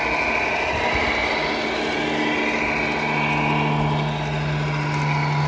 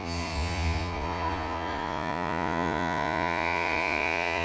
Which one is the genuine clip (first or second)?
first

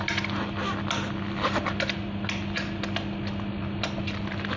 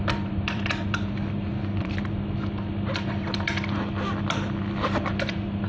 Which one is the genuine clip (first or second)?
first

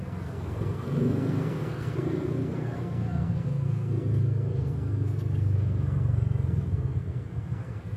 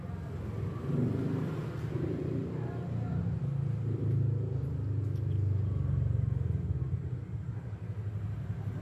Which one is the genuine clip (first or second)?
second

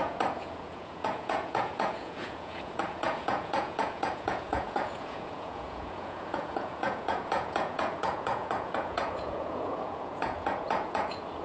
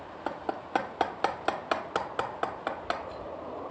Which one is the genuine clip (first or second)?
second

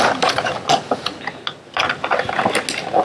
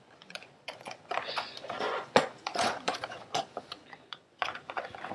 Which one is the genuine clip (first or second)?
first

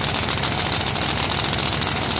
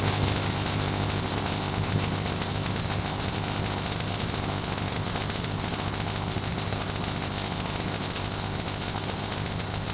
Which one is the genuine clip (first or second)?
first